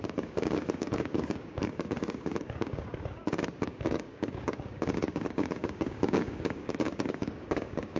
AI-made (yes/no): yes